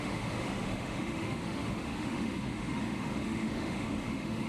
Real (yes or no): no